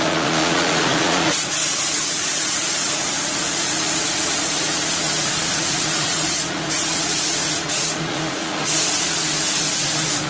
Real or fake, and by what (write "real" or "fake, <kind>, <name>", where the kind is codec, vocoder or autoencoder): fake, vocoder, Vocos